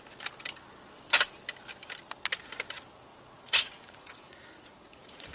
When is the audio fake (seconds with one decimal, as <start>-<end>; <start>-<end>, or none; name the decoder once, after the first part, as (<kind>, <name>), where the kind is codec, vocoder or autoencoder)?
3.1-5.3 (vocoder, Vocos)